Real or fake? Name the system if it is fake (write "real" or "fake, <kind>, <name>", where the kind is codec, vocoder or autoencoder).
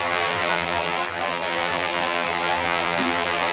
fake, vocoder, BigVGAN v2